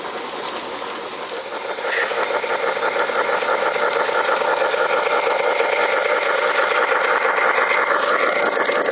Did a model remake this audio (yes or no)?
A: no